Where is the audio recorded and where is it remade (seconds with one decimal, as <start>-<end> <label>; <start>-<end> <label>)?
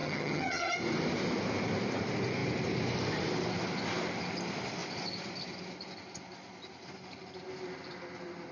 0.0-0.7 remade; 0.7-8.5 recorded